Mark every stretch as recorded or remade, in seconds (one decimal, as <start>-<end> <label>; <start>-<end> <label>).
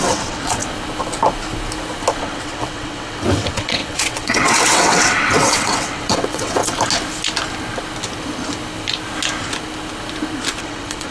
0.0-0.6 remade; 0.6-2.2 recorded; 2.2-6.6 remade; 6.6-10.6 recorded; 10.6-11.1 remade